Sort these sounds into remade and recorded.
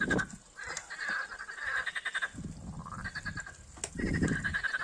recorded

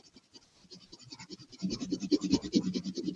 remade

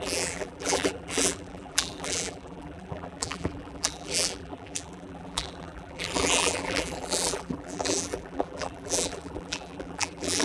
remade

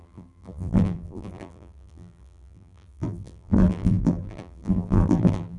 remade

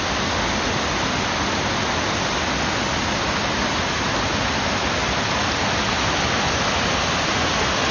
recorded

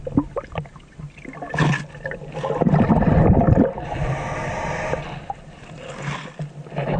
recorded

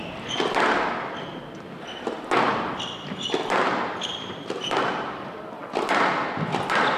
recorded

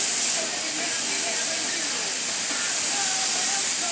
remade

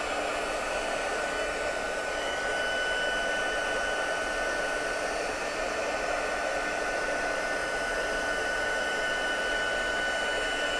recorded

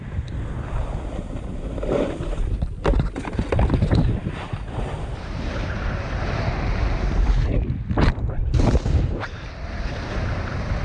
recorded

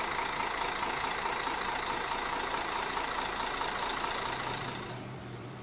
remade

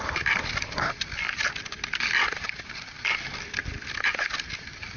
recorded